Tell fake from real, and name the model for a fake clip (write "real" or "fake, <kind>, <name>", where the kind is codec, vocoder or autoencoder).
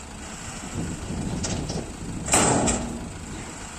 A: real